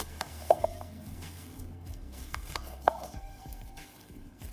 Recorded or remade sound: remade